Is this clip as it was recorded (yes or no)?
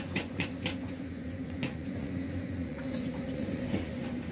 no